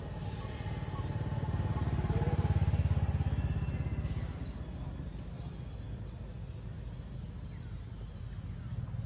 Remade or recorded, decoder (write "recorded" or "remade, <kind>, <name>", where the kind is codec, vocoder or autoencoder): recorded